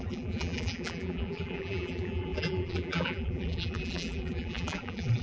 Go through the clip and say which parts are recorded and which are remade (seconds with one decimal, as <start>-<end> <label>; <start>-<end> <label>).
0.0-5.2 remade